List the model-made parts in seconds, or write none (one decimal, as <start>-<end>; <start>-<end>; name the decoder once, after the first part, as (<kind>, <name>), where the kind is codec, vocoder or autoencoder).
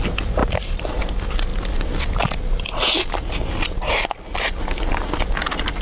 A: 0.4-1.0 (vocoder, BigVGAN v2)